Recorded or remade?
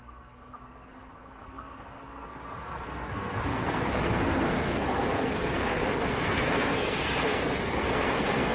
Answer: remade